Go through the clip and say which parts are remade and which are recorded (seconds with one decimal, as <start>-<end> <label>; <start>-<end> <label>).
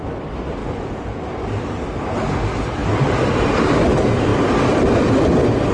0.0-0.6 recorded; 0.6-1.2 remade; 1.2-5.7 recorded